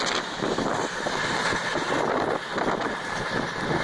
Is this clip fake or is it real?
real